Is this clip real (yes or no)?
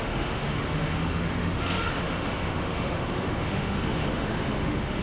no